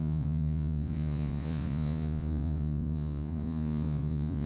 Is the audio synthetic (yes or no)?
yes